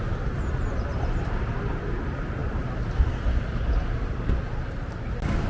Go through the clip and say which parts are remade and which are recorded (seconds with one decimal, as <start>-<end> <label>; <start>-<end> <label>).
0.0-5.5 recorded